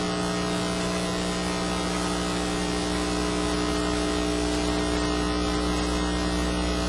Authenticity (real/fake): real